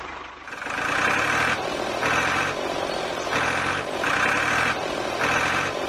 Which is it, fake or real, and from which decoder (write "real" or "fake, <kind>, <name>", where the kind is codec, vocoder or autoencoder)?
real